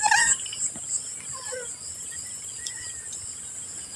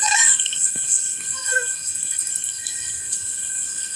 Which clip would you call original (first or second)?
first